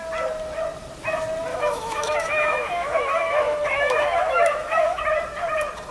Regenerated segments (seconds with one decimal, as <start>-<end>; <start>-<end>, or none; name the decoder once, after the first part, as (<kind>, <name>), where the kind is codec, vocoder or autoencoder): 1.5-5.0 (autoencoder, DAC-VAE)